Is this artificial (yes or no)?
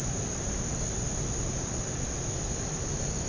no